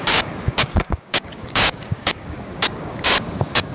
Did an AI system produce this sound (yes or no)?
yes